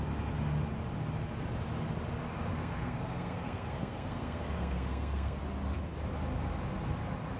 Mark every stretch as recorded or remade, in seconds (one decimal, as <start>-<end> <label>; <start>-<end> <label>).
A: 0.0-2.5 recorded; 2.5-5.4 remade; 5.4-7.4 recorded